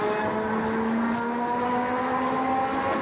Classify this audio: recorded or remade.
recorded